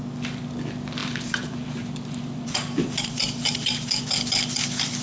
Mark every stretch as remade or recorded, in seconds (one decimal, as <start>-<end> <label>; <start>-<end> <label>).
0.0-1.0 recorded; 1.0-4.0 remade; 4.0-5.0 recorded

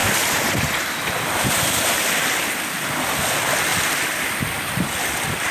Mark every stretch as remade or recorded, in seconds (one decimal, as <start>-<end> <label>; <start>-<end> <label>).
0.0-3.7 remade; 3.7-4.2 recorded; 4.2-5.5 remade

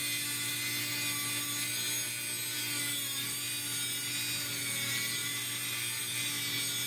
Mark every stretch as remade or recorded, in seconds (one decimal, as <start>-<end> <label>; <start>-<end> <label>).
0.0-6.9 recorded

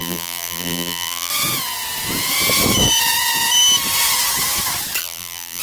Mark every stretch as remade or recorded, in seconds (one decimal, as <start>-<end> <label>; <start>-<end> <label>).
0.0-1.3 remade; 1.3-5.0 recorded; 5.0-5.6 remade